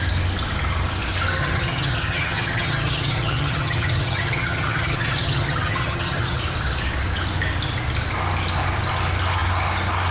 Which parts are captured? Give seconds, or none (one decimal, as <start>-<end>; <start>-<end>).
0.0-1.4; 6.4-10.1